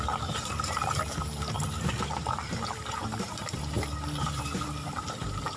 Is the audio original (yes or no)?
no